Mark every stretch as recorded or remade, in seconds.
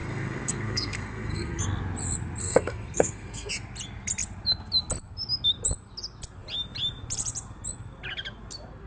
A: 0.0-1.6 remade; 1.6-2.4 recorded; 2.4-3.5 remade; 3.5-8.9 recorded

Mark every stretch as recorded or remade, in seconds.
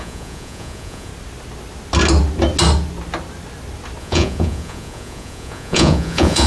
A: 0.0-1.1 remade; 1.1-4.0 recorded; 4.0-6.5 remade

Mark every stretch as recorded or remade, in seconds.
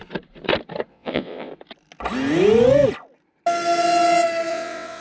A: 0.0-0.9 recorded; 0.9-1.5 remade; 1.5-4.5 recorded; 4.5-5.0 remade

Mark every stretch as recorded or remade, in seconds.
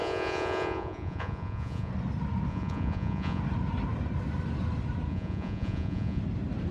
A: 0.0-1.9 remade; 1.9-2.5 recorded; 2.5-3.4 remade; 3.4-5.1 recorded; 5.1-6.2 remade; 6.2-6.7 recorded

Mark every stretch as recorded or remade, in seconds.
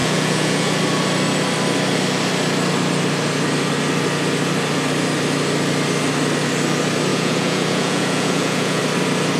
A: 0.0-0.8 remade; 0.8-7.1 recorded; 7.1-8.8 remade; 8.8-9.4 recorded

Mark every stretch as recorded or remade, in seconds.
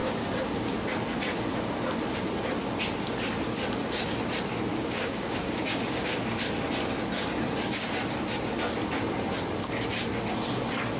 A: 0.0-4.7 recorded; 4.7-6.2 remade; 6.2-11.0 recorded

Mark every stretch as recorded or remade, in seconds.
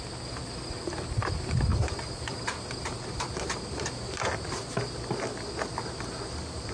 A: 0.0-6.7 recorded